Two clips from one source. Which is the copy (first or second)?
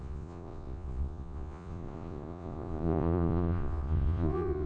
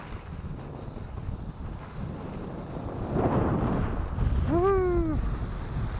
first